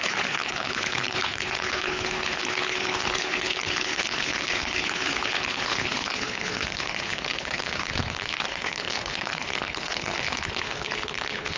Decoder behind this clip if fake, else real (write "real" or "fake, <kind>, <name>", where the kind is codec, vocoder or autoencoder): fake, codec, HILCodec